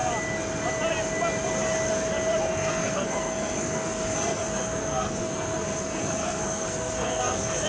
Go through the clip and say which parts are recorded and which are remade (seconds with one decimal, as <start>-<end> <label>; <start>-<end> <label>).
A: 0.0-2.4 recorded; 2.4-7.7 remade